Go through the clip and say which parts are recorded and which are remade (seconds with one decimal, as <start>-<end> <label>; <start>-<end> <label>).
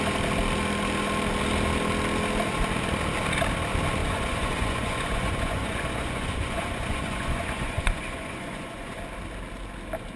0.0-4.0 recorded; 4.0-9.0 remade; 9.0-10.2 recorded